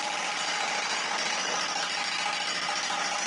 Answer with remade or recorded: recorded